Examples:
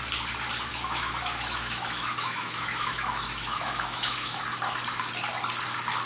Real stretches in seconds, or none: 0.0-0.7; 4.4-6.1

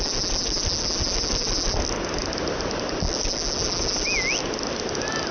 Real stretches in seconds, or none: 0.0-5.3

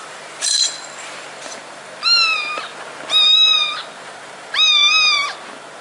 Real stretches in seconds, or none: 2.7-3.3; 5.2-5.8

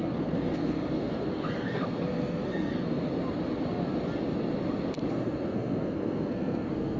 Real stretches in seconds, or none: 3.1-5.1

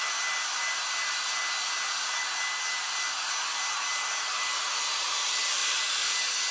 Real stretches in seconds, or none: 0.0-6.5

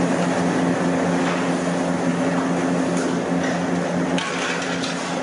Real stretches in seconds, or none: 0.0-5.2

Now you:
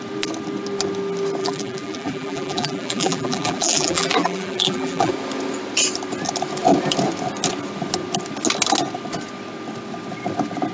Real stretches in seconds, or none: 0.0-1.4; 5.1-10.7

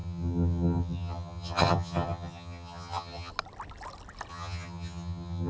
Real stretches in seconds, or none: 3.3-4.3